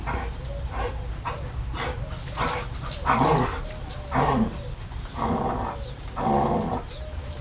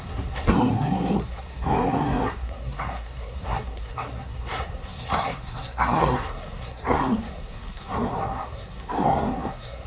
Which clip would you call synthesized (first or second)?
second